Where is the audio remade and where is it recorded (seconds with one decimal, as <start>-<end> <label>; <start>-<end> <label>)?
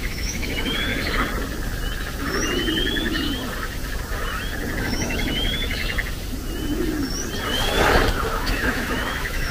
0.0-0.9 remade; 0.9-4.8 recorded; 4.8-5.8 remade; 5.8-8.3 recorded; 8.3-9.5 remade